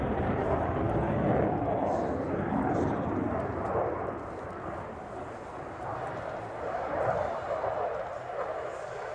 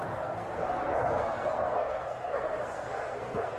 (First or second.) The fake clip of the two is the second